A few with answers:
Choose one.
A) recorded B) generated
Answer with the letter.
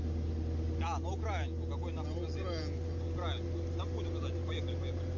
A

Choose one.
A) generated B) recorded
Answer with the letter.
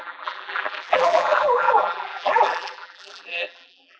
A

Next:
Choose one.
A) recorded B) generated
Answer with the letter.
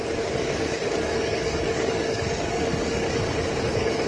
B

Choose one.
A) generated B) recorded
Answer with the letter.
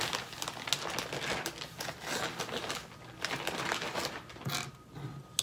B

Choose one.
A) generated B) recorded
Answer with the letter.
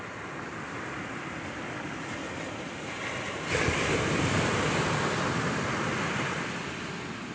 B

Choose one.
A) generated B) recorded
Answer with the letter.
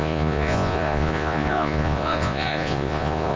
A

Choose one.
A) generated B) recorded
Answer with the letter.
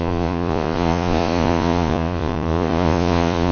A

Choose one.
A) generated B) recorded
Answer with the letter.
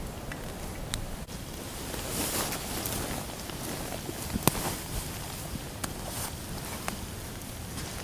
B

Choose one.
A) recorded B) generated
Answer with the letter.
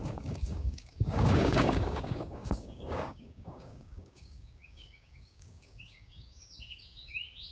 B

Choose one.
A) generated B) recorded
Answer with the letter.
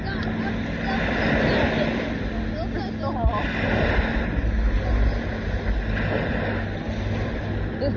B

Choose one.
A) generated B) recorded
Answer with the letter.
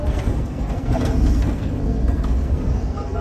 A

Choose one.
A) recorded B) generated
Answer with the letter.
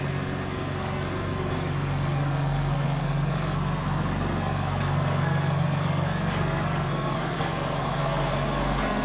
B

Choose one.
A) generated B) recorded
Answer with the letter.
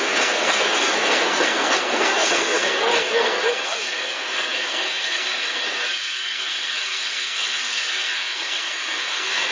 A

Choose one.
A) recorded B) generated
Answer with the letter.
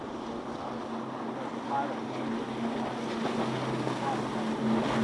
A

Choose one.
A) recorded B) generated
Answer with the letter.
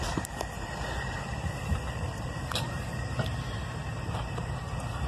B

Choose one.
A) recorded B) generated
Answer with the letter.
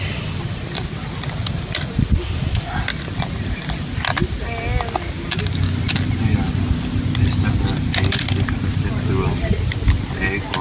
A